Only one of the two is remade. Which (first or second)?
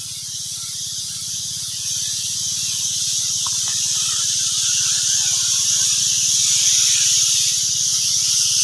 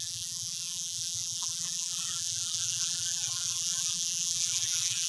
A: second